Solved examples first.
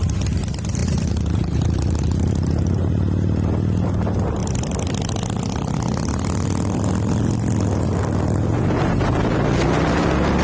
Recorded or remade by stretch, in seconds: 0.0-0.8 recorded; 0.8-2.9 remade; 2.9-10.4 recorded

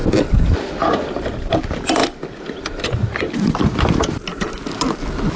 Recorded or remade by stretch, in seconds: 0.0-1.5 remade; 1.5-5.4 recorded

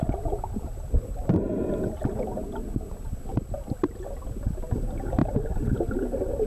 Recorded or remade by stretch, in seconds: 0.0-1.7 remade; 1.7-3.3 recorded; 3.3-4.2 remade; 4.2-5.2 recorded; 5.2-5.8 remade; 5.8-6.5 recorded